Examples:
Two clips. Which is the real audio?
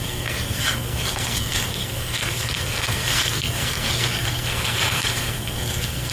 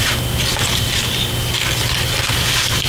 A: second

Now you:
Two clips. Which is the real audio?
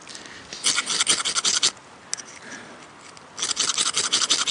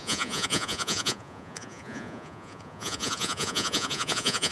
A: first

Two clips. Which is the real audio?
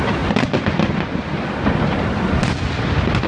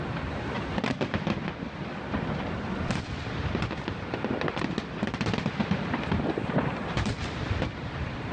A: first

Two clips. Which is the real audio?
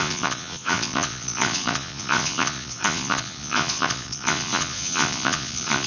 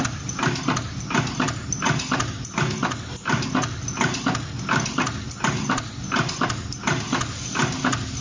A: second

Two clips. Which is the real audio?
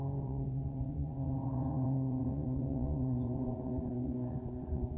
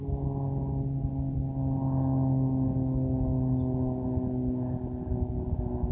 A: second